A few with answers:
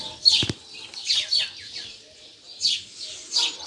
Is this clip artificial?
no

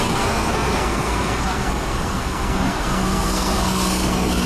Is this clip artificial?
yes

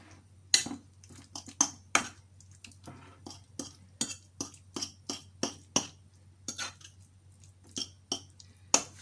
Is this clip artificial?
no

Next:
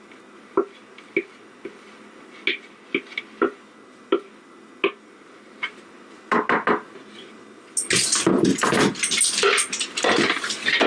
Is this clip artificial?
no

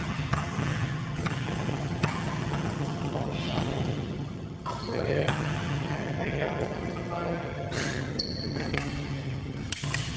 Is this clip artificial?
yes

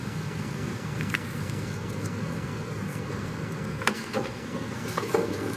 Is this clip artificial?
yes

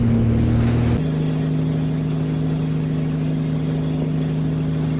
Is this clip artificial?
no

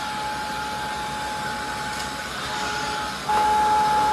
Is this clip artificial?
no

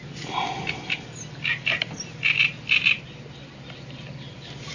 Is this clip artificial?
no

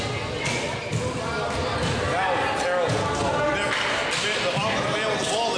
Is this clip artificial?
no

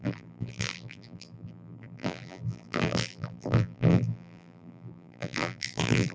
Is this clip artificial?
yes